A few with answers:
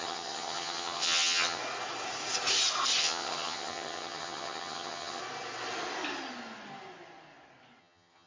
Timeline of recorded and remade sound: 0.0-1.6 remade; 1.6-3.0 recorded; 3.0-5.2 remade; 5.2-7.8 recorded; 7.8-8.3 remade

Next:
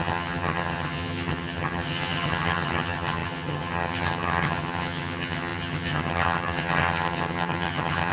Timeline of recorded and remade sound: 0.0-8.1 remade

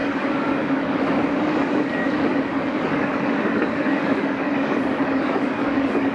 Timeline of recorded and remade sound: 0.0-6.1 remade